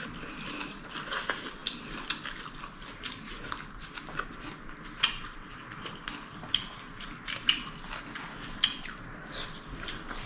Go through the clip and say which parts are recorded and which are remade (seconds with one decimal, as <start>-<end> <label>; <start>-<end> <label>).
0.0-10.3 recorded